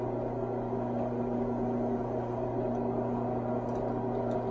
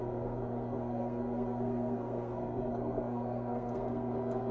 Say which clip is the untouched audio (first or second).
first